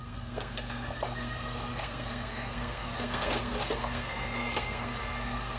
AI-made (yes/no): yes